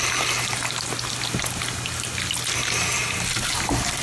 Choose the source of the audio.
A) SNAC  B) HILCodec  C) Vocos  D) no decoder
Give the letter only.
D